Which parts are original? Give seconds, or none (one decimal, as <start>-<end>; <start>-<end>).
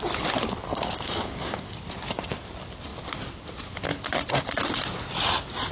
0.0-0.7; 1.8-5.7